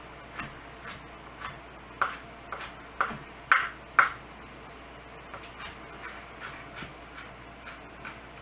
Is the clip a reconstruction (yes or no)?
no